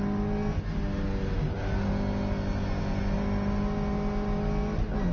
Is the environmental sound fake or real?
real